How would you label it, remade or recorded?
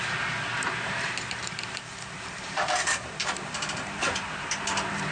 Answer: remade